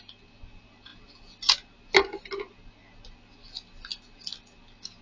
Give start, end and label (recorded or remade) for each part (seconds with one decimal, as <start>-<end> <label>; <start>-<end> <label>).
0.0-5.0 recorded